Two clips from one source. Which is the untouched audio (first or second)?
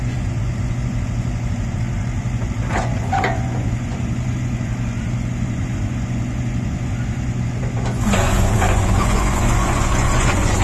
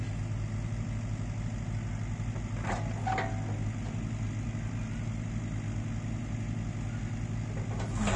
second